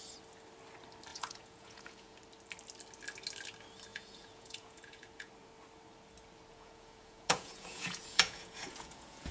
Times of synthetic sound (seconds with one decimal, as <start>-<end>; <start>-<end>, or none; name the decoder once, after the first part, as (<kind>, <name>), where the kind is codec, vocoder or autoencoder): 1.1-2.2 (vocoder, Vocos); 3.9-5.3; 6.5-9.3